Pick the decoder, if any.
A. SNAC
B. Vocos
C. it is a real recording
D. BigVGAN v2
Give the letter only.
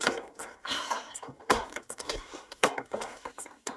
A